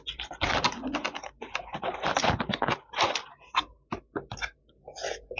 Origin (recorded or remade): recorded